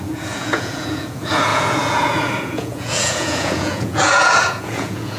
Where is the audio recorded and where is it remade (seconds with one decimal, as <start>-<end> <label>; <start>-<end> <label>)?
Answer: 0.0-5.2 remade